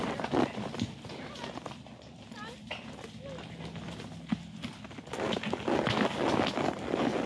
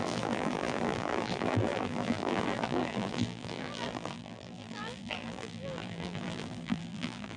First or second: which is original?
first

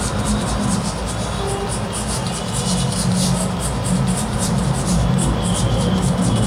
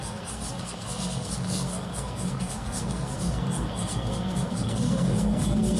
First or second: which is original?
first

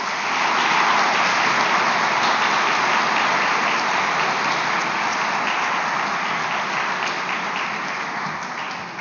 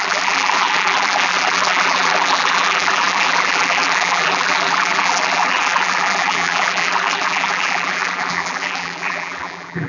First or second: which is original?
first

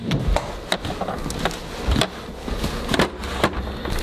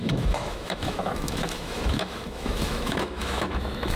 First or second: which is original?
first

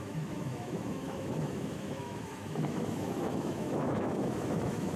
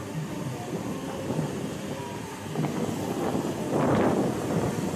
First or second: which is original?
second